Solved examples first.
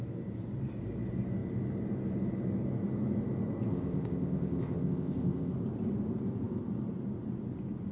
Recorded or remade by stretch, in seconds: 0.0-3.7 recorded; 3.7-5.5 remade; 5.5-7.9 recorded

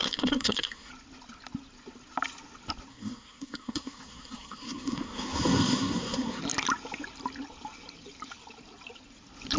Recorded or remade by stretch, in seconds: 0.0-0.9 remade; 0.9-2.9 recorded; 2.9-6.4 remade; 6.4-9.6 recorded

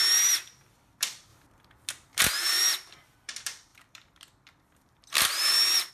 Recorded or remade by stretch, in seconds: 0.0-1.3 remade; 1.3-2.2 recorded; 2.2-5.9 remade

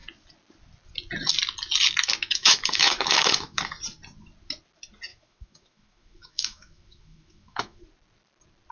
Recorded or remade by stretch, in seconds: 0.0-2.4 recorded; 2.4-3.6 remade; 3.6-5.1 recorded; 5.1-7.8 remade; 7.8-8.7 recorded

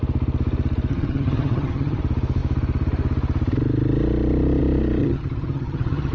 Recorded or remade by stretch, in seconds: 0.0-0.9 recorded; 0.9-2.0 remade; 2.0-5.0 recorded; 5.0-6.1 remade

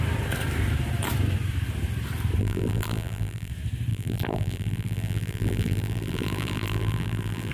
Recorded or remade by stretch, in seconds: 0.0-2.4 recorded; 2.4-3.5 remade; 3.5-3.9 recorded; 3.9-7.5 remade